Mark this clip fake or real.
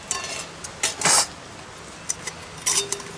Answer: real